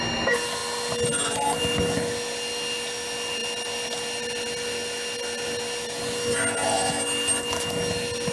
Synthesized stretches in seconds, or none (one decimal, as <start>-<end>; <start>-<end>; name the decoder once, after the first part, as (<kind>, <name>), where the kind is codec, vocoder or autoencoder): none